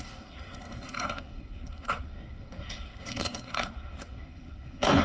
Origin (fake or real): fake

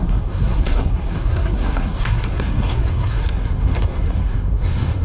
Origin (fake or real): fake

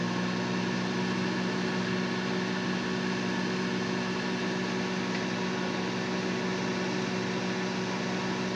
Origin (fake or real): real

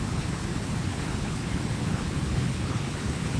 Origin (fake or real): fake